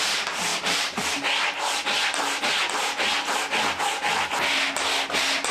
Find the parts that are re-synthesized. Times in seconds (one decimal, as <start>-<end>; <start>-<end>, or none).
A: none